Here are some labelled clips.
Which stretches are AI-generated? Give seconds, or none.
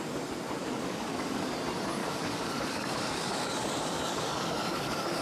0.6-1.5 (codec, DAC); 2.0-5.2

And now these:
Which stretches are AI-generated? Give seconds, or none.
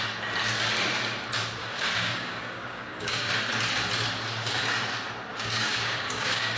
1.6-3.3 (codec, DAC); 5.3-6.6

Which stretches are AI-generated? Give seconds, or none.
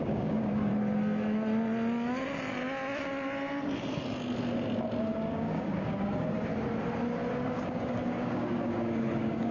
0.0-0.7 (codec, DAC); 5.0-6.5; 7.3-9.5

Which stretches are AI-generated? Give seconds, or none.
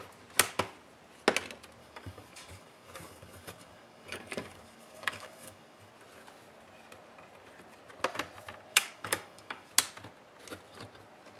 1.8-5.9 (codec, DAC); 8.7-9.7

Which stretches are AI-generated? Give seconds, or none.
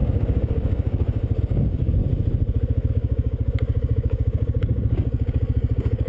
0.0-2.0 (codec, DAC); 2.9-6.1